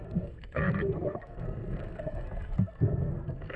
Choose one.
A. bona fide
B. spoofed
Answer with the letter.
B